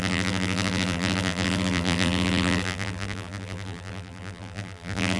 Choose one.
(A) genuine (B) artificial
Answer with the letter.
B